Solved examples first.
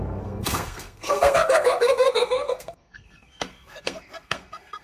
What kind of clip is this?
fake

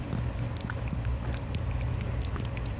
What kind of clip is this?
real